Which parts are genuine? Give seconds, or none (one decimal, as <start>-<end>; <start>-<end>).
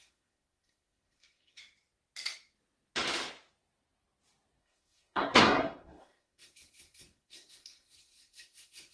1.6-4.6